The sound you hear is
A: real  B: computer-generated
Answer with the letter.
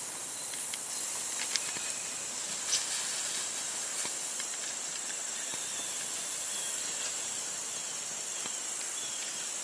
A